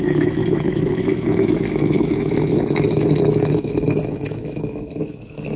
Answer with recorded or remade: remade